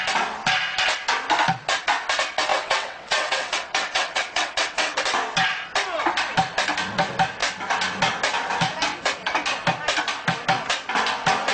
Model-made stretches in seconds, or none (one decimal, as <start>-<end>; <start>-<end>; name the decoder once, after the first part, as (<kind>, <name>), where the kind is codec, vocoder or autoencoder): 2.5-5.0 (vocoder, WaveNeXt)

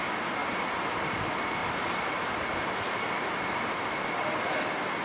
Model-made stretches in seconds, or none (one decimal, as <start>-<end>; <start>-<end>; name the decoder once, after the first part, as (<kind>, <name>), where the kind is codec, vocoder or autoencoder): 0.4-1.2 (vocoder, BigVGAN v2); 1.6-4.6